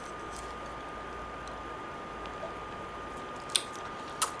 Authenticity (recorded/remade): recorded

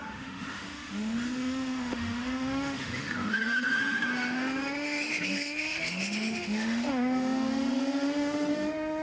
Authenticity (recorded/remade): remade